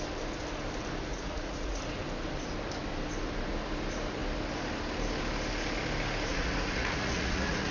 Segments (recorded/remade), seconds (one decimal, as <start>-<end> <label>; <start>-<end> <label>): 0.0-1.1 recorded; 1.1-1.8 remade; 1.8-6.3 recorded; 6.3-7.7 remade